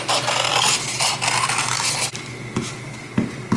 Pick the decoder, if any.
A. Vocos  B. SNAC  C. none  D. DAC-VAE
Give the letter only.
C